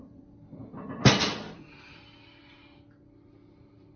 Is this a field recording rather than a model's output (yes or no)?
yes